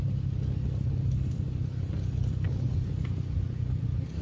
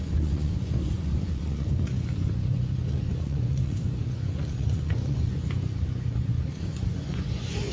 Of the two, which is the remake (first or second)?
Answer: second